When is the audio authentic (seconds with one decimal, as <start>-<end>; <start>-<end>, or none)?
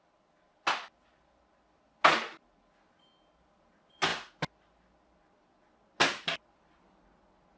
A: 0.0-7.6